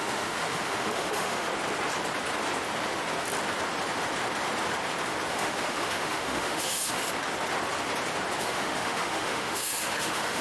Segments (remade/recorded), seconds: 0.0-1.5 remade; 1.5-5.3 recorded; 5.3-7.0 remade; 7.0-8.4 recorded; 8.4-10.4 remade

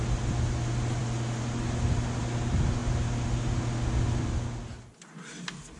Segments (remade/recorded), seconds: 0.0-5.8 recorded